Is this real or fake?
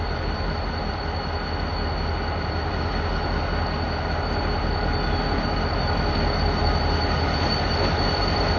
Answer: real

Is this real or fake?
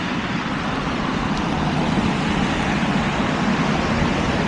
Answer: real